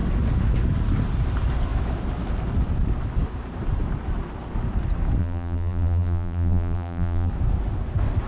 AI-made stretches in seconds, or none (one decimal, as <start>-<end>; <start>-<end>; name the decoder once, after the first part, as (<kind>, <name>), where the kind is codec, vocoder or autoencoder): 5.2-7.3 (vocoder, BigVGAN v2)